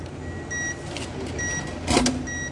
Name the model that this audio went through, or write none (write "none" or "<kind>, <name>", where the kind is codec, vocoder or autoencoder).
none